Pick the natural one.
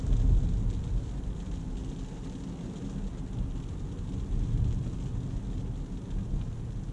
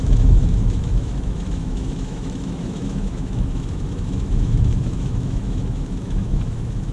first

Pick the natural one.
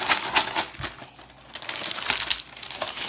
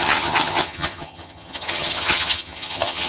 first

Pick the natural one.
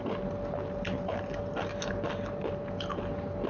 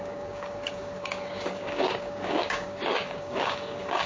first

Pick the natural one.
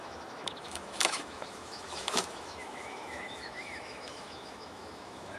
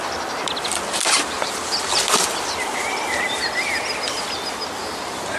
second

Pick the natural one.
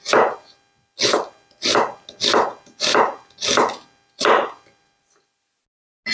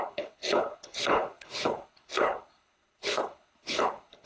first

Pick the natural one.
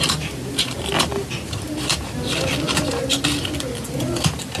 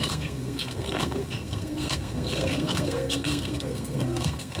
first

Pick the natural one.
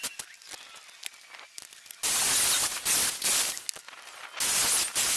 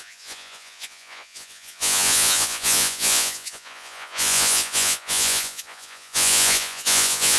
first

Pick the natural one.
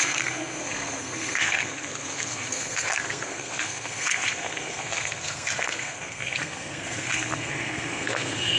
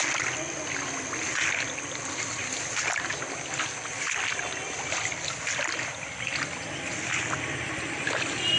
second